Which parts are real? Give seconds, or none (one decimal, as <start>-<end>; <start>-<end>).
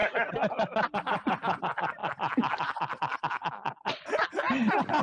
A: 0.0-5.0